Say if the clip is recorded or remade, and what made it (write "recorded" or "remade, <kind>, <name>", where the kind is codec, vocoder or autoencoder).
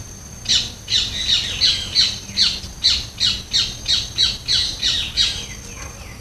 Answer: recorded